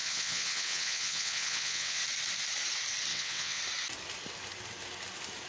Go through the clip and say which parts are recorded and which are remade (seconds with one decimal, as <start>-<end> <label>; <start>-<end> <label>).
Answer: 0.0-2.0 remade; 2.0-3.1 recorded; 3.1-3.6 remade; 3.6-5.5 recorded